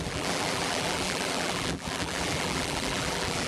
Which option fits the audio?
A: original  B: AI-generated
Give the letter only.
B